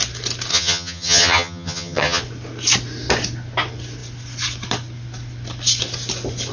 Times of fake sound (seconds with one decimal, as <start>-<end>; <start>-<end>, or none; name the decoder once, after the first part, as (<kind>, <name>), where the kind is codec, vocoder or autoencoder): 0.5-2.2 (vocoder, HiFi-GAN)